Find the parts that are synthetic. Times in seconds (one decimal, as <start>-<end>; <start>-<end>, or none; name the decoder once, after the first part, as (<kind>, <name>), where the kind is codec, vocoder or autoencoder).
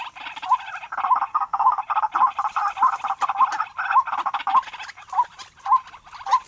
1.3-1.8 (codec, SNAC)